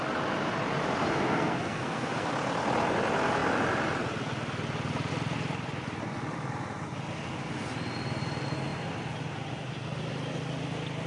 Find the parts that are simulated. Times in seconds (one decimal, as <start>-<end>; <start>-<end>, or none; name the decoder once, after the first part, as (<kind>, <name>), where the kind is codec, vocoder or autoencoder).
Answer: 1.0-2.3 (codec, SNAC)